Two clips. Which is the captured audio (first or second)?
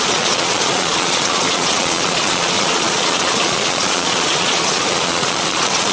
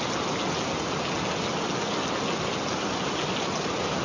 second